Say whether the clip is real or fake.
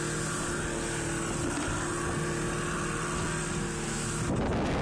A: real